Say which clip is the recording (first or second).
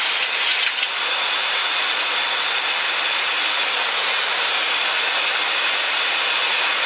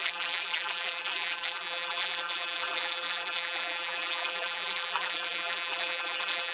first